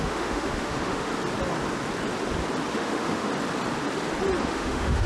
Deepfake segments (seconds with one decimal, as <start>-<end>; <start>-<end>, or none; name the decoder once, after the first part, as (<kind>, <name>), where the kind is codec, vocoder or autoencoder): 0.0-1.1 (autoencoder, DAC-VAE); 2.7-3.3; 4.4-5.1

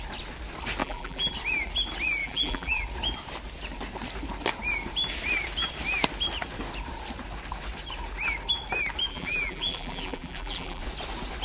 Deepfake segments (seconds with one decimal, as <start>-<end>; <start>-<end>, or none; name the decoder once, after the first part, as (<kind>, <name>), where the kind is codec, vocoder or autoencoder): 0.8-1.3 (vocoder, BigVGAN v2); 2.2-2.8; 9.1-10.8

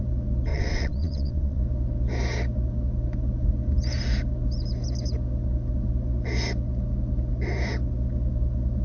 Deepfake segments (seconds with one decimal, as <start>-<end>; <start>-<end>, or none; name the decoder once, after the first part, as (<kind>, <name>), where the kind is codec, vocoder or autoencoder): 0.5-1.6 (vocoder, WaveNeXt)

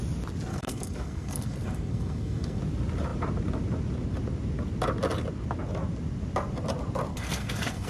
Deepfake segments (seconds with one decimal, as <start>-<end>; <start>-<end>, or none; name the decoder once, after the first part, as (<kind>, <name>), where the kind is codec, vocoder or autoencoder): 0.5-2.6 (codec, SNAC); 7.1-7.9

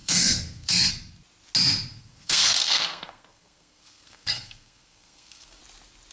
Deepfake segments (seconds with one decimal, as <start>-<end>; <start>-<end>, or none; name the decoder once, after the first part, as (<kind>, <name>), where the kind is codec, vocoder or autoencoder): 0.0-0.9 (codec, SNAC); 1.9-5.6